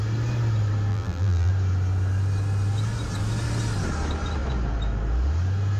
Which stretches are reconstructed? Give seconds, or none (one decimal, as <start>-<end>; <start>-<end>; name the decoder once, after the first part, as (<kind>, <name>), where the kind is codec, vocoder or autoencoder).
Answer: 0.9-1.5 (vocoder, BigVGAN v2)